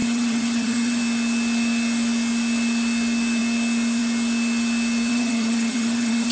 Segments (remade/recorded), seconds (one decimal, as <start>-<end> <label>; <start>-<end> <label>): 0.0-1.0 remade; 1.0-5.1 recorded; 5.1-6.3 remade